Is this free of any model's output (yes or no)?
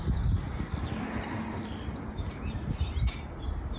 yes